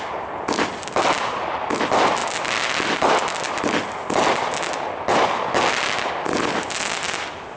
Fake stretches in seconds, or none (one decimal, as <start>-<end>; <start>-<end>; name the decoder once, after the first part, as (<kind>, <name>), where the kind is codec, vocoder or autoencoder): none